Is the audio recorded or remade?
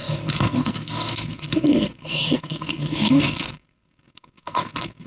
remade